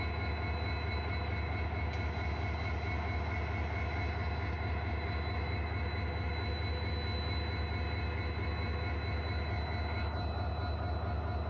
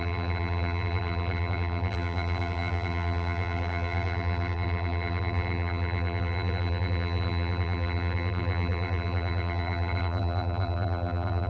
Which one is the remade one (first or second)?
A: second